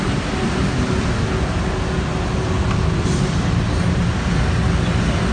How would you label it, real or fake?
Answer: real